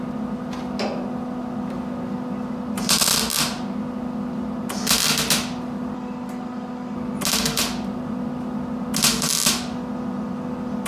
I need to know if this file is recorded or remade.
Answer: recorded